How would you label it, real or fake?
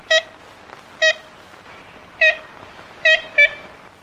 real